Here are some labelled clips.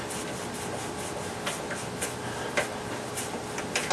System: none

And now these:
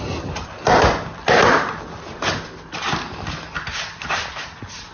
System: none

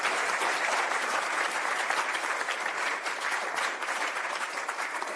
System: vocoder, BigVGAN v2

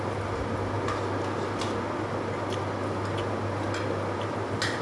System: none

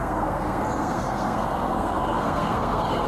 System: codec, SNAC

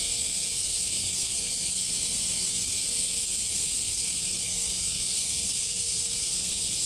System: codec, SNAC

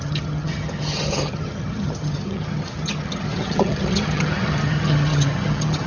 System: vocoder, HiFi-GAN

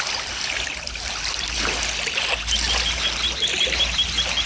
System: none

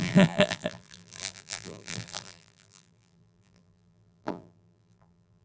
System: vocoder, BigVGAN v2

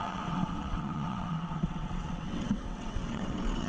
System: vocoder, WaveNeXt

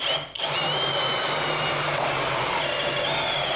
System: none